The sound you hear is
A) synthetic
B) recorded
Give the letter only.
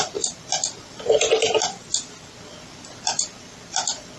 B